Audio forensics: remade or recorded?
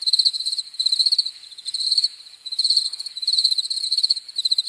remade